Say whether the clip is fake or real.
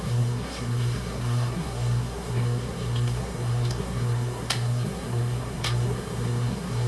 fake